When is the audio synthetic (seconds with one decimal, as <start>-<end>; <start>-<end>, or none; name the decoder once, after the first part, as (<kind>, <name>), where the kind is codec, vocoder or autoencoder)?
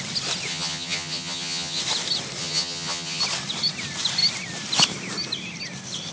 0.5-1.8 (vocoder, HiFi-GAN); 2.4-3.2